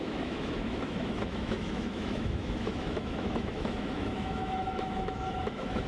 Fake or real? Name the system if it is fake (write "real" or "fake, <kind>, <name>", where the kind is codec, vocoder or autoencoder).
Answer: fake, autoencoder, DAC-VAE